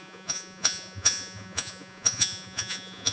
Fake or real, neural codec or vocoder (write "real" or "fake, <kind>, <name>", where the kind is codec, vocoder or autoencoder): fake, vocoder, Vocos